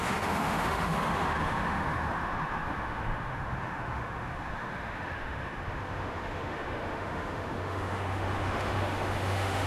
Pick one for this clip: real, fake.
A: fake